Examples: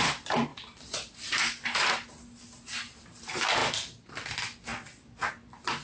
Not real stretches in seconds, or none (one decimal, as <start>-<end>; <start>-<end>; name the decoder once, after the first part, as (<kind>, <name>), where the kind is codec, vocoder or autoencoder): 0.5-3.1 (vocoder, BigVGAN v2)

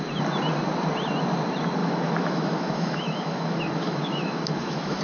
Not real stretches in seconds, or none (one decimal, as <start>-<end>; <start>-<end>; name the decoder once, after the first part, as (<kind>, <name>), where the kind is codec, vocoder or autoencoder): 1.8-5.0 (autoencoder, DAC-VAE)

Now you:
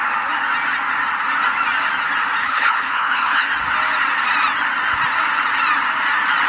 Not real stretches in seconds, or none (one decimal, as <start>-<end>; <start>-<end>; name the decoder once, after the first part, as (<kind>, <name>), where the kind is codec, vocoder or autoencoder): 2.4-3.5 (codec, HILCodec)